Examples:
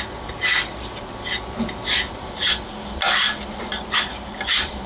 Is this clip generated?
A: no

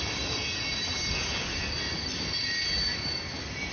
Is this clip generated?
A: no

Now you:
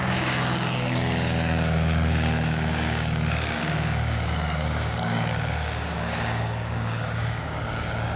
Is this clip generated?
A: yes